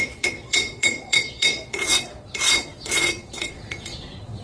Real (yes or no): no